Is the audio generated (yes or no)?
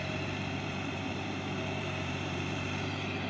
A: yes